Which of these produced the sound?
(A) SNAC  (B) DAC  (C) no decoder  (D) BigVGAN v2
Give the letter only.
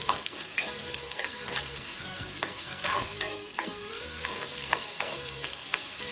A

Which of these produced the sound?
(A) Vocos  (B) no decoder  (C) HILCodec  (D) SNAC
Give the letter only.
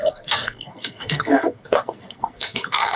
D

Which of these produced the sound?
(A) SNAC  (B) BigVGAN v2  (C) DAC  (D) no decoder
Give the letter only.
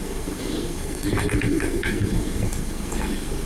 A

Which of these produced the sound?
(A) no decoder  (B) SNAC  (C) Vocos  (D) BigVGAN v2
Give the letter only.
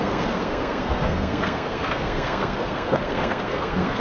B